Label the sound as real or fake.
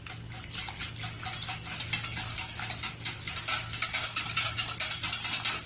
real